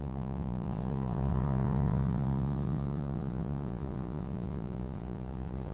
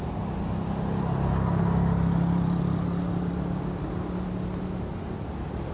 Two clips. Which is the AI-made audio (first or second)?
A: first